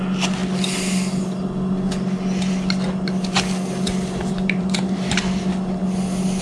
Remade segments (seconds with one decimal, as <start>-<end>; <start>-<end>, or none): 4.2-5.1

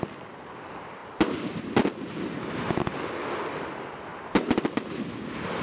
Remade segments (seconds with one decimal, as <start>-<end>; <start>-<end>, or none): none

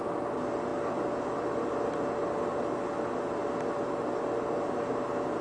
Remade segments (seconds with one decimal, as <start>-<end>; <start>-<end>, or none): none

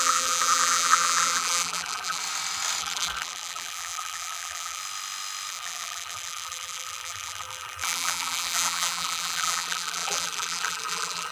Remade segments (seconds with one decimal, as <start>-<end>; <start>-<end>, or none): 0.0-2.2; 2.8-4.8; 5.5-11.3

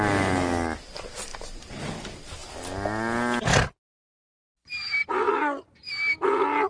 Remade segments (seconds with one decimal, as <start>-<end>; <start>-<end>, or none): 1.3-1.8